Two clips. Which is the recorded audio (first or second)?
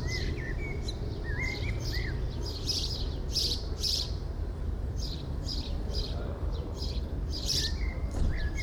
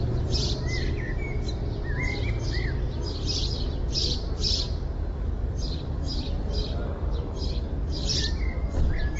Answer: second